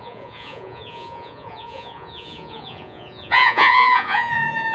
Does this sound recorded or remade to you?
remade